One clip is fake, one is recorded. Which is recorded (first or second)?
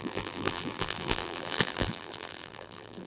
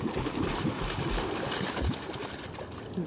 second